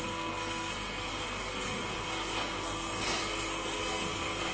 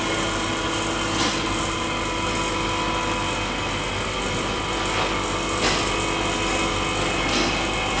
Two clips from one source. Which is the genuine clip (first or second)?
second